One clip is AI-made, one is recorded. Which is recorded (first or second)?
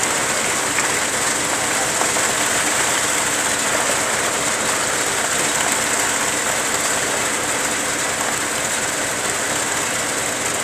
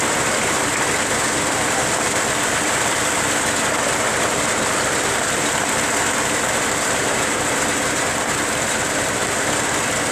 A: first